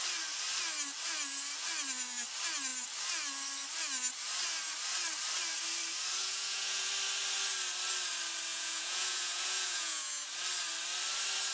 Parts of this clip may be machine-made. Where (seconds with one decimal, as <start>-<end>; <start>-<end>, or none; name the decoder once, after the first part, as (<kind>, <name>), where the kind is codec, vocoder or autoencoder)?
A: 6.2-6.9 (vocoder, Vocos); 8.5-10.1